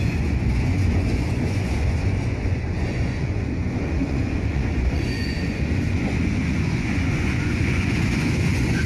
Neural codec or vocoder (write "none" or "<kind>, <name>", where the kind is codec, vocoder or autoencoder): vocoder, Vocos